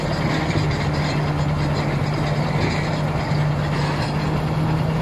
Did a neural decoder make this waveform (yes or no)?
no